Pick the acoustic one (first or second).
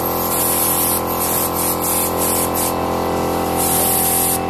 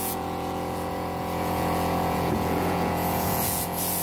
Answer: first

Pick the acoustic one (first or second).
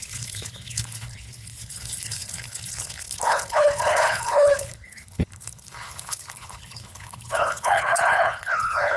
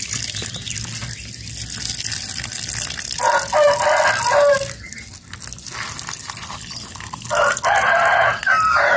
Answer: second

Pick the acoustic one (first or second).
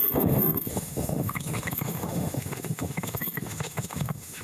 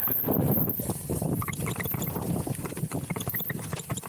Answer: second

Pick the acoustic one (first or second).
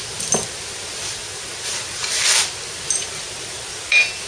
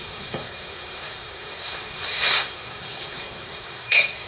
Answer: first